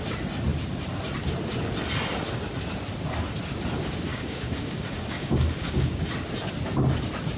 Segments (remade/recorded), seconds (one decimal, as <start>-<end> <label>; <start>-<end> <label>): 0.0-4.1 recorded; 4.1-6.0 remade; 6.0-7.4 recorded